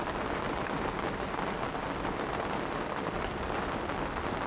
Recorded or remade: recorded